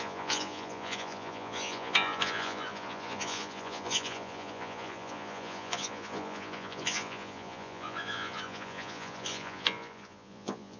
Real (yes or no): no